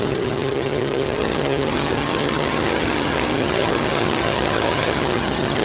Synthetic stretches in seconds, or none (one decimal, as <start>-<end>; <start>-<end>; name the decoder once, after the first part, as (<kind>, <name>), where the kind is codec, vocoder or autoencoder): 0.0-5.6 (vocoder, HiFi-GAN)